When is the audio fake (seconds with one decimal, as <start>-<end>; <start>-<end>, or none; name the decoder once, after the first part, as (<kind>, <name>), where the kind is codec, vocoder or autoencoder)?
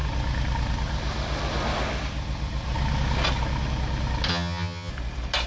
4.3-4.9 (vocoder, HiFi-GAN)